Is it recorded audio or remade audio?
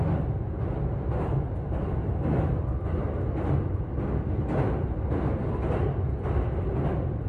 recorded